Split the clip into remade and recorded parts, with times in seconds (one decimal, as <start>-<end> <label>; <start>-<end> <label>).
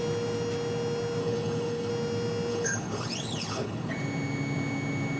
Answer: 0.0-1.2 recorded; 1.2-1.9 remade; 1.9-2.5 recorded; 2.5-3.9 remade; 3.9-5.2 recorded